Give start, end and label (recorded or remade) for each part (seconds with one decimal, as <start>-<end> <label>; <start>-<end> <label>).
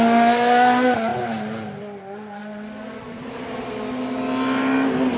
0.0-5.2 recorded